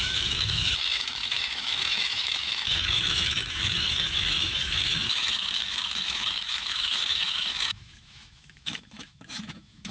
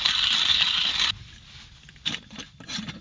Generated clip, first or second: first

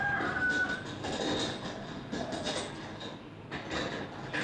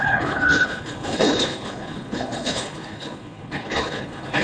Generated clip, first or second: second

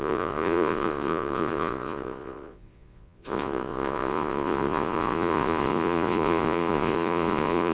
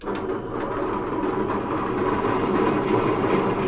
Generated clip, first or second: first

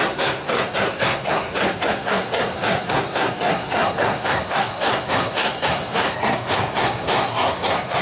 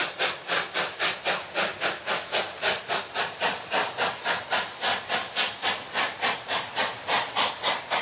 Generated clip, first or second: first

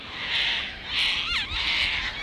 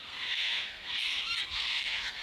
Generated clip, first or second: second